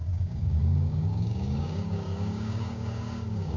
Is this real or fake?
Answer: fake